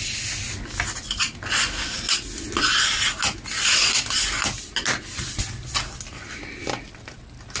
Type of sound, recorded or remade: recorded